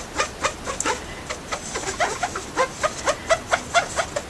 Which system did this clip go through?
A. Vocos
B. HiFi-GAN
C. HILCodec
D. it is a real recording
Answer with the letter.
D